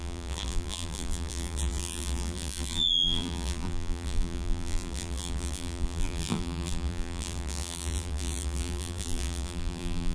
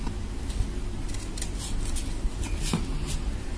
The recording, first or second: second